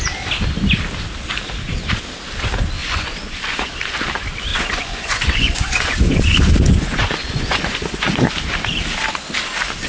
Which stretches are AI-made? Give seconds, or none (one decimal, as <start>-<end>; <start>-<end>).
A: 2.8-3.7; 4.5-8.3